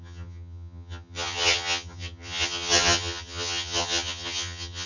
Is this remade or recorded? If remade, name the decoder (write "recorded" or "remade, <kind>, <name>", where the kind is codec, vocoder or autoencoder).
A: remade, vocoder, HiFi-GAN